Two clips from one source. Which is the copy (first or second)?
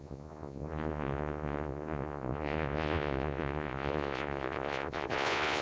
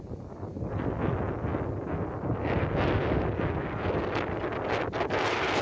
first